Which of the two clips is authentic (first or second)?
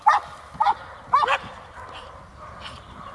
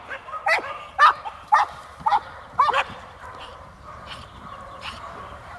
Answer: first